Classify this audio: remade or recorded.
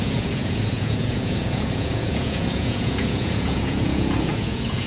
remade